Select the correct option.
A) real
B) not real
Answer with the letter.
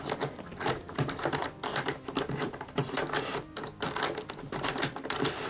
A